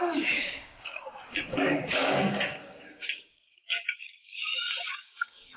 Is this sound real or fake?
fake